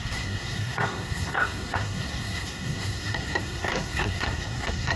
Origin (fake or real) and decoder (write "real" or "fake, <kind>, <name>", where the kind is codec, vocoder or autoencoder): fake, codec, SNAC